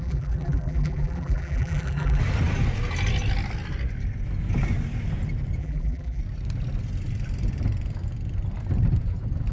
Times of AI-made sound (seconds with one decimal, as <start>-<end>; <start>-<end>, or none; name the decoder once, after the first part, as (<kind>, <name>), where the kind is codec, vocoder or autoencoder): 0.0-2.2 (vocoder, BigVGAN v2); 5.6-6.2